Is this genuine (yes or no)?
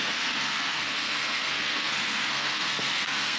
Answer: no